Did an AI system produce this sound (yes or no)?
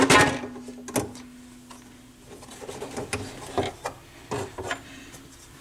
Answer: no